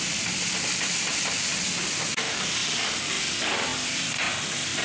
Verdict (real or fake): fake